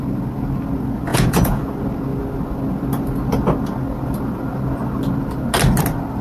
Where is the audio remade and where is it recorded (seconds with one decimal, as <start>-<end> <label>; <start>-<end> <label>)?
0.0-1.1 recorded; 1.1-1.7 remade; 1.7-6.2 recorded